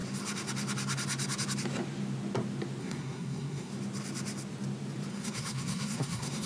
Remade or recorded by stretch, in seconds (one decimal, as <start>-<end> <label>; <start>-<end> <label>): 0.0-2.8 recorded; 2.8-3.7 remade; 3.7-5.1 recorded; 5.1-6.5 remade